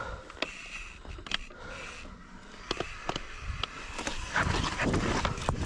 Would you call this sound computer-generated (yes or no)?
no